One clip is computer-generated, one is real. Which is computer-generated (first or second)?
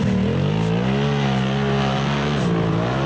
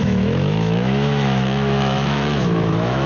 second